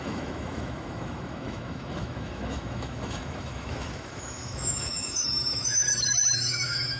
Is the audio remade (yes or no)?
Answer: yes